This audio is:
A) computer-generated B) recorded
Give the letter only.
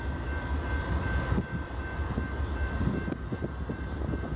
A